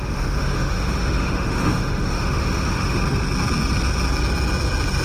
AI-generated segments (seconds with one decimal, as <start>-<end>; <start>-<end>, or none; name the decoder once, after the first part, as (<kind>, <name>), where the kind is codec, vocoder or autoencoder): 0.0-3.0 (autoencoder, DAC-VAE)